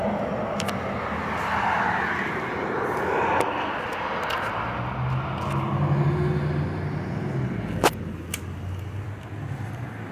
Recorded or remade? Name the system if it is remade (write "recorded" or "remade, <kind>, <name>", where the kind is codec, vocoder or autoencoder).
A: recorded